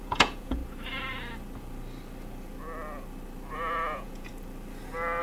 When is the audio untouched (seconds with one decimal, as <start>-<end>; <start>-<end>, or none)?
0.6-3.5; 4.3-5.2